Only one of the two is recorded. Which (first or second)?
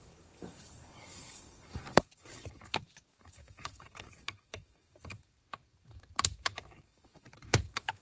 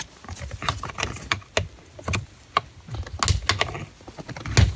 second